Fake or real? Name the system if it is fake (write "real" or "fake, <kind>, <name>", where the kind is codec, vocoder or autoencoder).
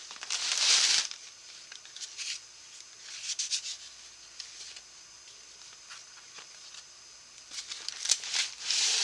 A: real